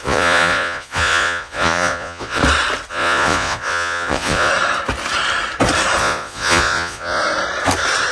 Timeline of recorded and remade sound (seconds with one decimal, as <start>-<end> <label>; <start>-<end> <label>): 0.0-2.4 remade; 2.4-2.9 recorded; 2.9-4.5 remade; 4.5-6.0 recorded; 6.0-7.2 remade; 7.2-8.1 recorded